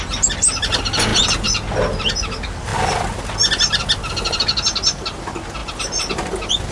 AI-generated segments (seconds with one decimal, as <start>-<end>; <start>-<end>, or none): none